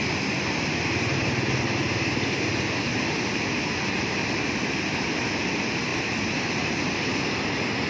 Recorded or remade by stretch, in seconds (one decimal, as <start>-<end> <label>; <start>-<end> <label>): 0.0-7.9 recorded